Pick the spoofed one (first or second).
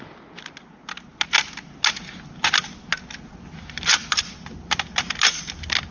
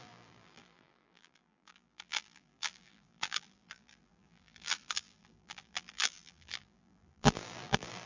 second